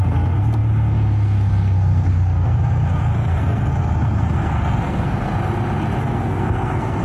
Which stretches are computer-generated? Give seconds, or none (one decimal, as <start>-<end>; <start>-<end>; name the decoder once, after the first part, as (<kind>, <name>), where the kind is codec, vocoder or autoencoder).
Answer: 0.0-5.3 (codec, SNAC); 6.0-7.0